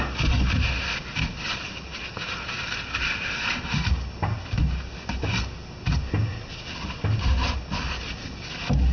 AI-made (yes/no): no